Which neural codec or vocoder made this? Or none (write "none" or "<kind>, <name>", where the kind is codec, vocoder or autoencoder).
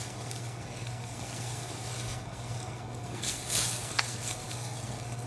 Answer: codec, SNAC